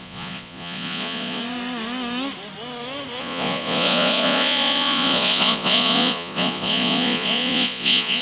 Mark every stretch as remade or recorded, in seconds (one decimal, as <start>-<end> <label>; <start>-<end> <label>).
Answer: 0.0-1.4 remade; 1.4-3.2 recorded; 3.2-8.2 remade